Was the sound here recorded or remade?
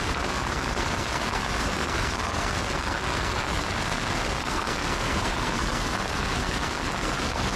remade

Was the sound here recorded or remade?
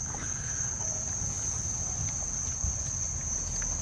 recorded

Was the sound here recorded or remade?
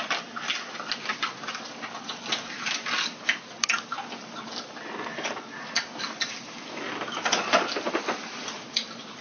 recorded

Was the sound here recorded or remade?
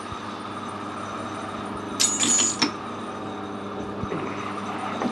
recorded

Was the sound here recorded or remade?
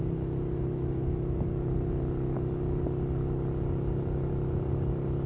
recorded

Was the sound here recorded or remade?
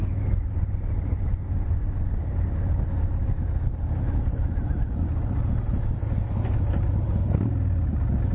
recorded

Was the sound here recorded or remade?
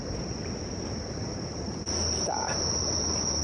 recorded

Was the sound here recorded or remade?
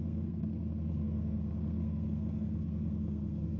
remade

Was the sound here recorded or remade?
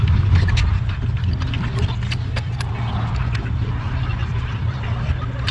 remade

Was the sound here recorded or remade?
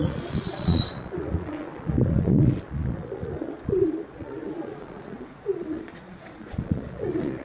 remade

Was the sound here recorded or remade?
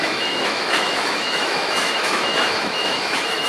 remade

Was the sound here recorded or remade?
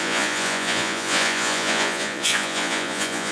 remade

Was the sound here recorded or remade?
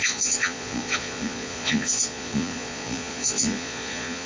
remade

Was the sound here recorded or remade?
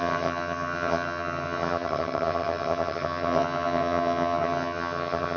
remade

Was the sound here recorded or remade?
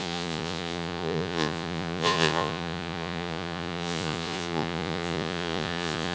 remade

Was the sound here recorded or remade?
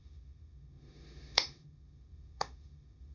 remade